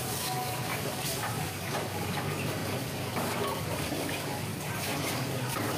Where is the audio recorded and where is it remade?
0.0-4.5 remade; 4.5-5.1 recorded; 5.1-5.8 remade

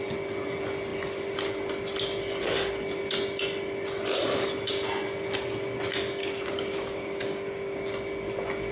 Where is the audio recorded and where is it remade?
0.0-6.2 recorded; 6.2-7.9 remade; 7.9-8.7 recorded

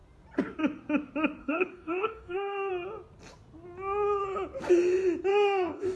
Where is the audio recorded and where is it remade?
0.0-1.4 recorded; 1.4-2.7 remade; 2.7-5.3 recorded; 5.3-6.0 remade

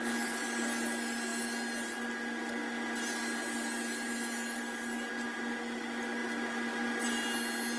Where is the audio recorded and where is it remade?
0.0-7.8 recorded

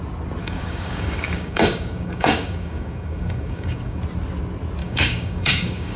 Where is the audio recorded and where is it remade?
0.0-0.4 recorded; 0.4-4.0 remade; 4.0-4.8 recorded; 4.8-6.0 remade

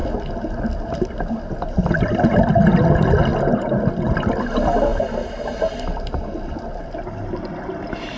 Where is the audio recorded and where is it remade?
0.0-8.2 recorded